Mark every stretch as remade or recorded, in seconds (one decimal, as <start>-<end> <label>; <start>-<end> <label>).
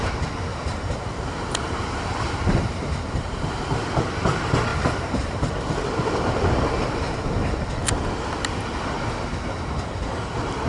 0.0-0.5 recorded; 0.5-3.9 remade; 3.9-4.7 recorded; 4.7-5.5 remade; 5.5-10.7 recorded